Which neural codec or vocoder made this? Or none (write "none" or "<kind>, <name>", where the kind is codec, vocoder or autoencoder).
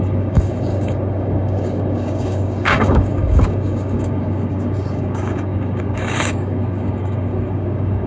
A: codec, DAC